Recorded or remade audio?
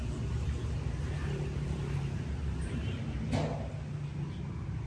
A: recorded